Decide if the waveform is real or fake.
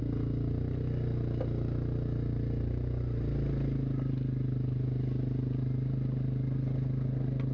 real